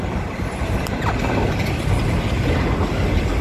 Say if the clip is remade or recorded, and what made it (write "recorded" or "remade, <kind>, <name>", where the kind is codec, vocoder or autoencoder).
recorded